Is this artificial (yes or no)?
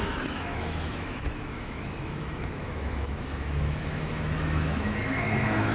yes